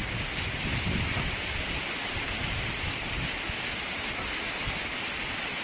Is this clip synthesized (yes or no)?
no